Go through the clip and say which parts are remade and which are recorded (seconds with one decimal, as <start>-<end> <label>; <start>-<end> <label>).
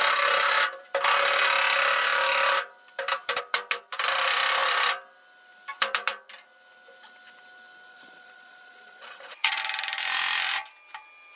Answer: 0.0-7.9 recorded; 7.9-9.6 remade; 9.6-11.4 recorded